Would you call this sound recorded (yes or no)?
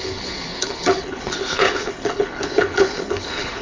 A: no